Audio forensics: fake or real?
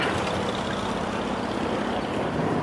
real